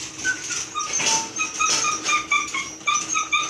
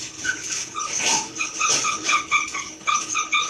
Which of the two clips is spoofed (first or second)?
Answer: second